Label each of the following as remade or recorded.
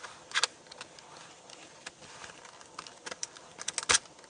recorded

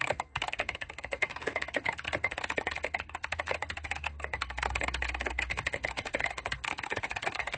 remade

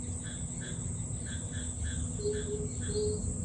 recorded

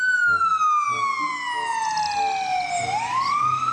recorded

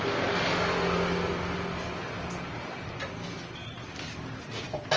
recorded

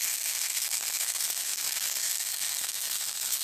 remade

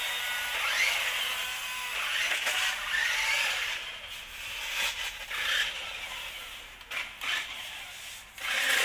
recorded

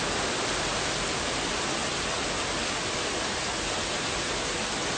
recorded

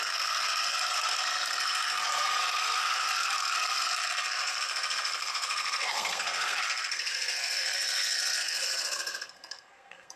remade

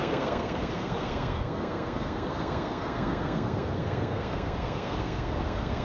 remade